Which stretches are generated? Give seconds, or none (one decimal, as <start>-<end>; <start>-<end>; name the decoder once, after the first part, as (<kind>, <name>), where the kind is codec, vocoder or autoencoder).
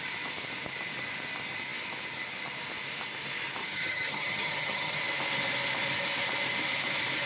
3.6-5.0 (vocoder, HiFi-GAN)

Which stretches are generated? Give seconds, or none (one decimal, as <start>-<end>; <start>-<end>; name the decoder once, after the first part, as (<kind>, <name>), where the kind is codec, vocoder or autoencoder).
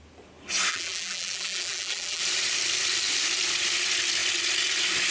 0.7-2.2 (vocoder, BigVGAN v2)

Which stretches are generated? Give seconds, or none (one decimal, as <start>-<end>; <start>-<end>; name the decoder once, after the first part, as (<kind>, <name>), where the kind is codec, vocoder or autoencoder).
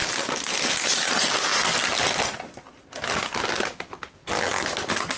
none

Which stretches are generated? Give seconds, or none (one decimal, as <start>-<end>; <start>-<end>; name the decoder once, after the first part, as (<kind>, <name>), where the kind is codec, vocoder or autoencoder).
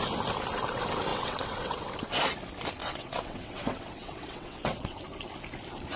1.1-1.9 (vocoder, WaveNeXt); 2.8-5.0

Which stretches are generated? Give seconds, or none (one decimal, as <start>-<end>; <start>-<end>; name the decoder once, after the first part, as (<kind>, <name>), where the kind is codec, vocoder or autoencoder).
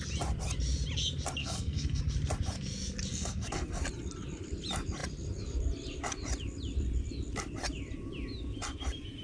1.4-2.0 (codec, SNAC); 3.1-3.8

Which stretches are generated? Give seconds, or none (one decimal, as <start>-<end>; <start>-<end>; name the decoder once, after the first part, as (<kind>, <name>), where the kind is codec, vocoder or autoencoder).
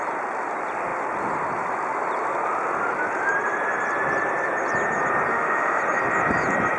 5.3-5.8 (autoencoder, DAC-VAE)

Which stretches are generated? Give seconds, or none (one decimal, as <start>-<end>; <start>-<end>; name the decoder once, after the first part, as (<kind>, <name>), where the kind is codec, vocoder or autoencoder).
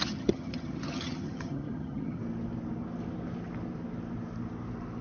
0.0-2.2 (vocoder, HiFi-GAN)